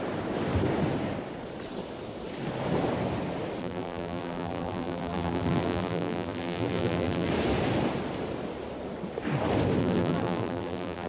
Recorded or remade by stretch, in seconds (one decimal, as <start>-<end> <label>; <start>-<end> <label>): 0.0-3.6 recorded; 3.6-7.3 remade; 7.3-9.8 recorded; 9.8-11.1 remade